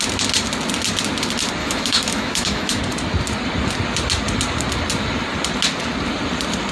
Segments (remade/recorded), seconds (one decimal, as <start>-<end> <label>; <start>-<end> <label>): 0.0-1.6 recorded; 1.6-2.8 remade; 2.8-6.7 recorded